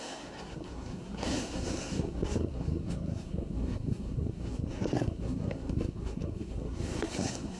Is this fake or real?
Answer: fake